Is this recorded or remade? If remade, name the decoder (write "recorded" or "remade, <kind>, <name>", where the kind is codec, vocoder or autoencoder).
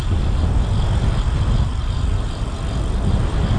recorded